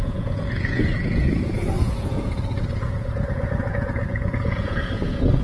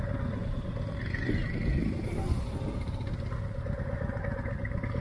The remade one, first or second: first